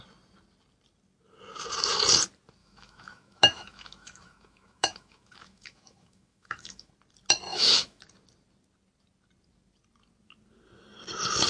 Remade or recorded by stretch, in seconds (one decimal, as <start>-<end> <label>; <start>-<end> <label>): 0.0-2.6 recorded; 2.6-6.9 remade; 6.9-7.5 recorded; 7.5-8.0 remade; 8.0-11.5 recorded